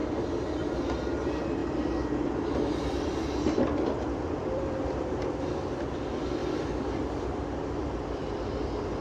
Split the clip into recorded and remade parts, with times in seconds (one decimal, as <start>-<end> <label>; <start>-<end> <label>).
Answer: 0.0-0.8 remade; 0.8-1.6 recorded; 1.6-6.0 remade; 6.0-6.4 recorded; 6.4-8.5 remade; 8.5-9.0 recorded